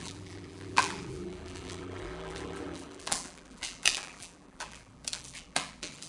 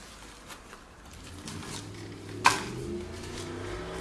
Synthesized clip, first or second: first